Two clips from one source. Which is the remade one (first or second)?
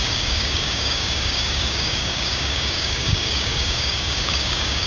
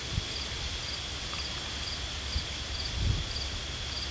first